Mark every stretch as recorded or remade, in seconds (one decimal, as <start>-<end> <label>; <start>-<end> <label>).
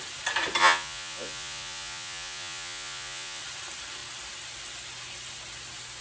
0.0-0.6 recorded; 0.6-3.4 remade; 3.4-6.0 recorded